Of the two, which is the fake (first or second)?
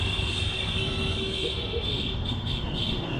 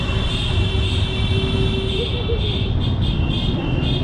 first